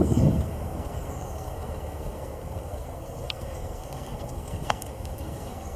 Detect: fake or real fake